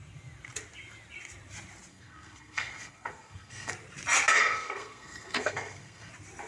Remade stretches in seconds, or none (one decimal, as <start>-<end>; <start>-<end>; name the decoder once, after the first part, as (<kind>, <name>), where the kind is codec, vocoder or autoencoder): 1.9-3.7 (codec, SNAC); 4.3-6.1